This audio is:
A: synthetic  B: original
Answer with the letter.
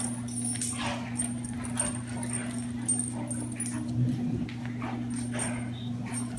B